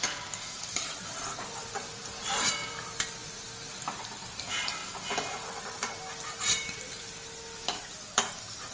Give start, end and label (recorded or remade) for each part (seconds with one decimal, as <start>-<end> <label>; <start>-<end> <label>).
0.0-3.2 remade; 3.2-4.0 recorded; 4.0-4.8 remade; 4.8-6.4 recorded; 6.4-8.7 remade